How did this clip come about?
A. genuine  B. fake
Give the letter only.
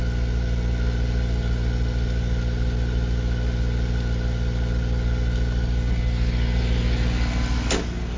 A